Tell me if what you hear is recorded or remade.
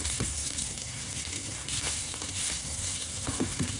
remade